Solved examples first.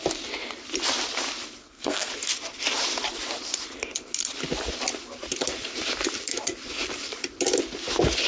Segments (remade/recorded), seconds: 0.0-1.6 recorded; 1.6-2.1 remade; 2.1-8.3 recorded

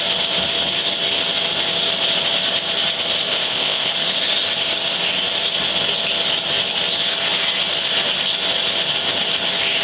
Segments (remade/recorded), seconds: 0.0-3.3 recorded; 3.3-3.9 remade; 3.9-9.8 recorded